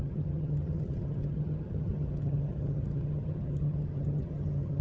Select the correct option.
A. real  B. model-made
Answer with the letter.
B